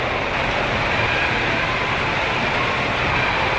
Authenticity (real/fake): real